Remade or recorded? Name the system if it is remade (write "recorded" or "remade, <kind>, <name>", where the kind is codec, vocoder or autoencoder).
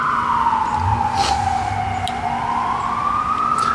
recorded